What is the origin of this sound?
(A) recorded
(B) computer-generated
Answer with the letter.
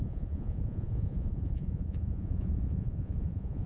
B